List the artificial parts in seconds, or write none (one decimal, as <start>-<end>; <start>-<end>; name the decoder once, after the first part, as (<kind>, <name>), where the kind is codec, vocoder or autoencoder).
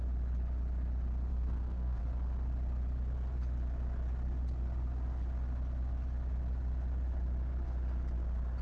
1.3-2.0 (codec, SNAC)